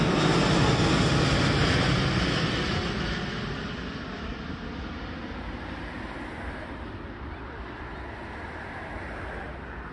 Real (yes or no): yes